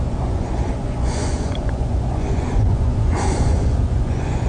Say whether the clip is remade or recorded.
remade